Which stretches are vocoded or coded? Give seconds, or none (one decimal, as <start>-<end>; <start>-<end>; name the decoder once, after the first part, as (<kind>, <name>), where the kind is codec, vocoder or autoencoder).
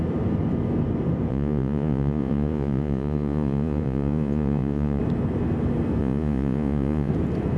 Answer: 1.3-5.0 (vocoder, Vocos); 6.0-7.1